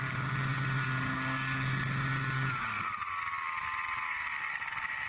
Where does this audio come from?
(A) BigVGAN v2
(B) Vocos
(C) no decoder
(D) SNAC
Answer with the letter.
C